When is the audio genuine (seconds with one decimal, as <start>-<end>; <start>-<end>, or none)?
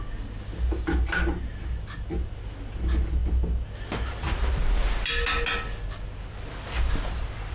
0.0-7.5